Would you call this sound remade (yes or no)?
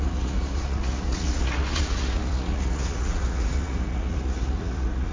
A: yes